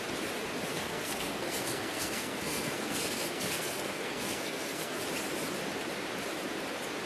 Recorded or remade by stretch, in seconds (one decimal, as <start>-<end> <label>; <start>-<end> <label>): 0.0-0.7 recorded; 0.7-5.0 remade; 5.0-7.1 recorded